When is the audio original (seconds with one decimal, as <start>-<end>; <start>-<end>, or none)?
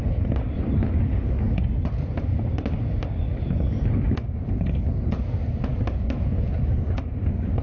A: 0.0-7.6